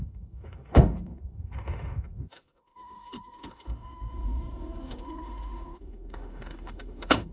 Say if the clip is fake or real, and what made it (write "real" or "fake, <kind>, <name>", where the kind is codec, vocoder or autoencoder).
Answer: fake, autoencoder, DAC-VAE